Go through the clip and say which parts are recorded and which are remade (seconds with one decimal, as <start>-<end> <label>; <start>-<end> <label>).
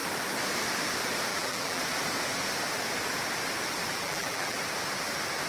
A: 0.0-1.3 recorded; 1.3-1.8 remade; 1.8-3.9 recorded; 3.9-4.6 remade; 4.6-5.5 recorded